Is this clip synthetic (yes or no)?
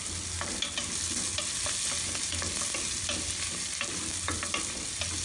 no